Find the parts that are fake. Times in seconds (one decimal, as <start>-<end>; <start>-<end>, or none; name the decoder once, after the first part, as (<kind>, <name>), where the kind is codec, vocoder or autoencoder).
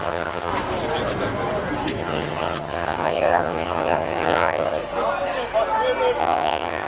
0.0-0.5 (vocoder, HiFi-GAN); 2.0-4.8; 6.2-6.9